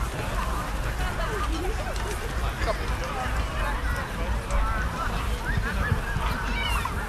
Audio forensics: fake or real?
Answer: real